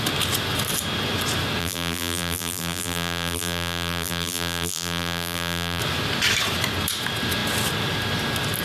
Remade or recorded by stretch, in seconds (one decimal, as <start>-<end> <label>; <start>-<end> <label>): 0.0-1.6 recorded; 1.6-5.8 remade; 5.8-8.6 recorded